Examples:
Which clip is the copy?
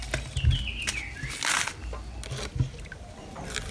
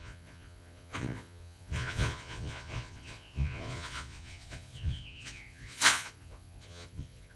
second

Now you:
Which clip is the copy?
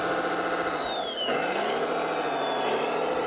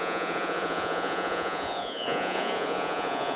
second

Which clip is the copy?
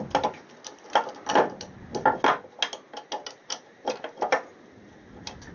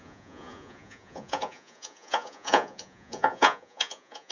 second